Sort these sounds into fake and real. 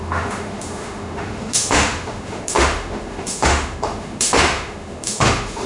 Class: fake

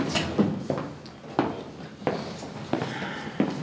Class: real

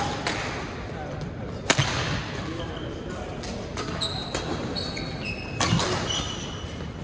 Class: real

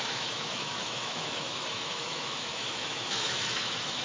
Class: fake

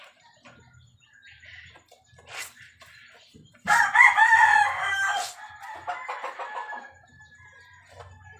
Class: real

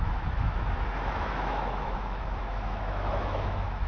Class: fake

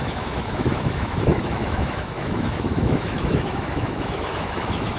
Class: fake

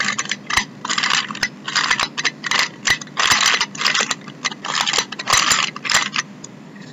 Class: real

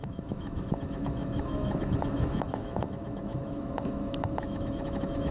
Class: fake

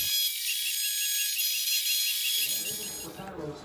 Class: real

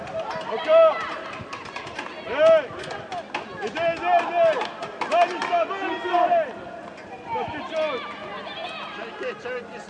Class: real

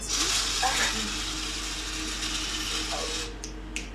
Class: real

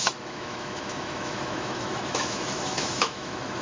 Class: fake